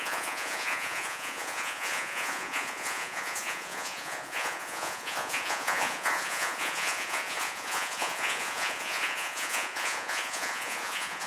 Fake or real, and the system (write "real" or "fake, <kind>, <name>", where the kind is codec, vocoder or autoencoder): fake, vocoder, Vocos